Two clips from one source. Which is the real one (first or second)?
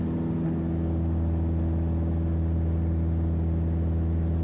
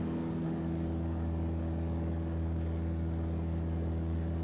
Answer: first